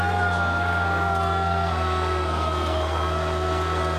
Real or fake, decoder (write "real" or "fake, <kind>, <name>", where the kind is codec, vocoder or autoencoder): fake, codec, SNAC